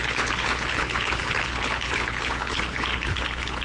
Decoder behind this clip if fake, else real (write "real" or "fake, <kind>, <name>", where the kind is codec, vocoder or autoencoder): fake, codec, HILCodec